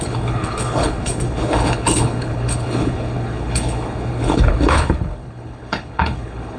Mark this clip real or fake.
fake